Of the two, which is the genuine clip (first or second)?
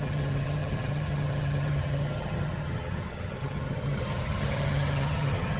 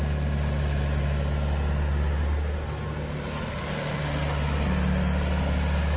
second